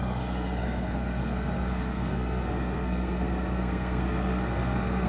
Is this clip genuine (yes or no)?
no